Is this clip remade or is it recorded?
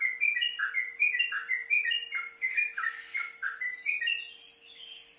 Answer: recorded